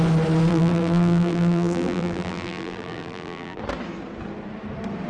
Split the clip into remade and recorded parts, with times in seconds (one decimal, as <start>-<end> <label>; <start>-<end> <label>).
0.0-0.5 recorded; 0.5-3.6 remade; 3.6-5.1 recorded